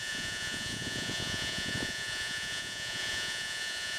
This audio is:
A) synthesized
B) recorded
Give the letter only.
A